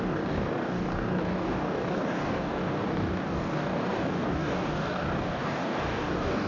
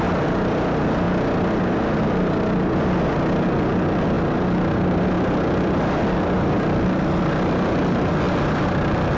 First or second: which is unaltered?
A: second